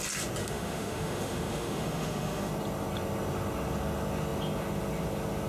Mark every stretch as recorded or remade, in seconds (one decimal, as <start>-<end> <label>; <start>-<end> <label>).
0.0-0.4 recorded; 0.4-2.5 remade; 2.5-5.5 recorded